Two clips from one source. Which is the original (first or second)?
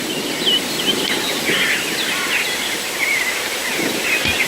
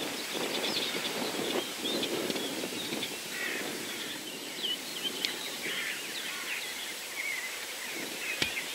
first